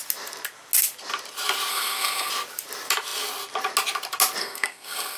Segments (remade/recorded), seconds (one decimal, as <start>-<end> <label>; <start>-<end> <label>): 0.0-1.7 recorded; 1.7-2.3 remade; 2.3-4.4 recorded; 4.4-5.2 remade